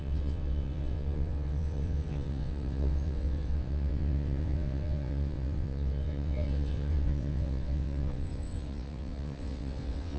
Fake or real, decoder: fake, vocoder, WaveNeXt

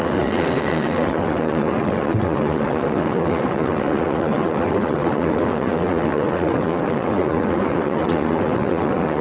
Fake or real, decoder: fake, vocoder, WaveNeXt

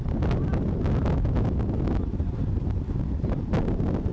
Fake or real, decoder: real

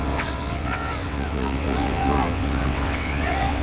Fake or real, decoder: fake, vocoder, WaveNeXt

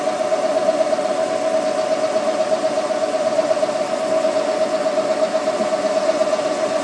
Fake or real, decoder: real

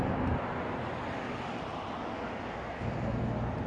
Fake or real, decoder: real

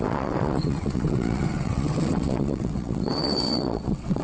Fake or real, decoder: fake, vocoder, WaveNeXt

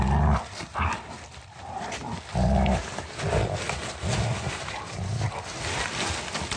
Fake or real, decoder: real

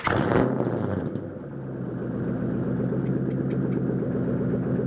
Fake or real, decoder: real